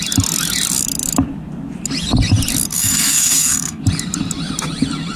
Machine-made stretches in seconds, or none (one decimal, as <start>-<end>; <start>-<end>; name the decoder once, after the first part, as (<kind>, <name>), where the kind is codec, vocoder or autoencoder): 2.7-3.8 (codec, SNAC)